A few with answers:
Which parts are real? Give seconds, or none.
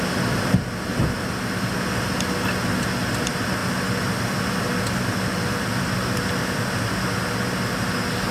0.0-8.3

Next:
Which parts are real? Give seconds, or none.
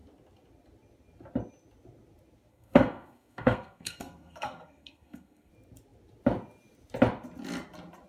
0.0-2.5; 5.5-8.1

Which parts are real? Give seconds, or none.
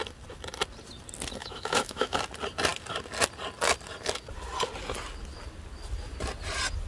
0.0-1.4; 2.2-6.9